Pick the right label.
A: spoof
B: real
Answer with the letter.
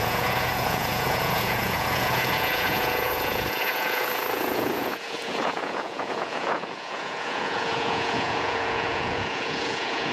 A